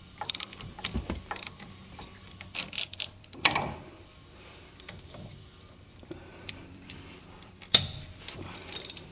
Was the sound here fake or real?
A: fake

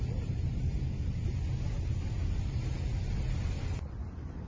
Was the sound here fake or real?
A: real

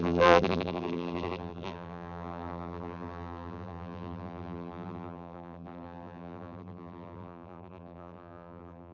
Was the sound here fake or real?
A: fake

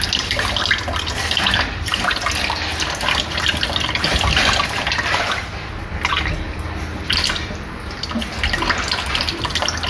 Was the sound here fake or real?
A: real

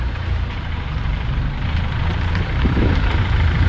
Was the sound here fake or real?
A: fake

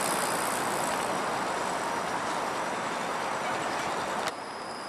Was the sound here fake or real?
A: real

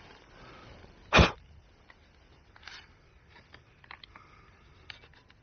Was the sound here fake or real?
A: real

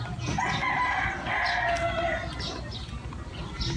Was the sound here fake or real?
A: real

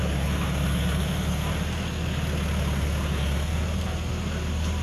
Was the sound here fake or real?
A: real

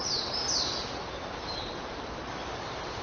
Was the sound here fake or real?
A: fake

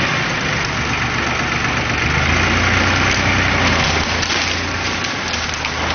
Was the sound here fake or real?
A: real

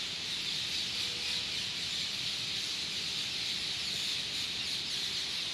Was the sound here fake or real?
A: real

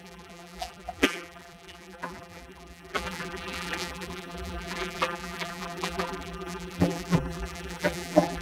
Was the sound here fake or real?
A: fake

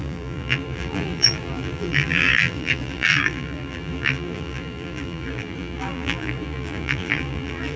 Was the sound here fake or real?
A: fake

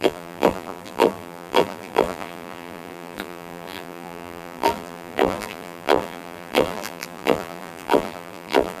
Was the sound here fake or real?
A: fake